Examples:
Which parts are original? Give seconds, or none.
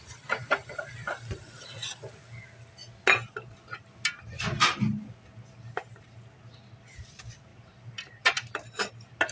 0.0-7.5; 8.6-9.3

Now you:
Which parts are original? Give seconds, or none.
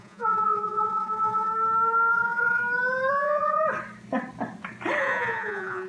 1.5-2.1; 2.6-3.1; 3.6-5.0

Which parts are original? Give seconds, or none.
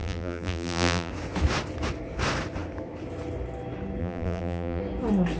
1.1-4.0; 4.8-5.4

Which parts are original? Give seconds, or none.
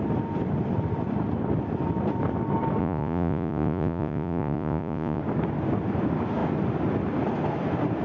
0.0-2.8; 5.2-8.0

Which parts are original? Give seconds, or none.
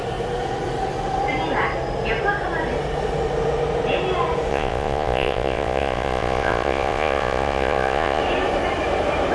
0.0-4.5; 8.2-9.3